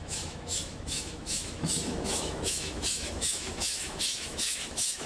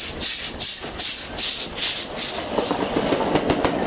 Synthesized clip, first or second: first